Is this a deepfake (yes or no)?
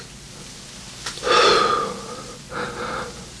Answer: no